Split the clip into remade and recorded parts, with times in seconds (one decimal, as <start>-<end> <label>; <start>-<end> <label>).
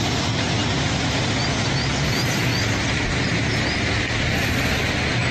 0.0-5.3 recorded